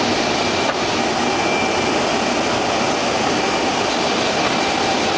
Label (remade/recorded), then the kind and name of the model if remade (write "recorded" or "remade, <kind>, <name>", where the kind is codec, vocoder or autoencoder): recorded